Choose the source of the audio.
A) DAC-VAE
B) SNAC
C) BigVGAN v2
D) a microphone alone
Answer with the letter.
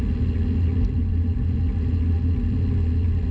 D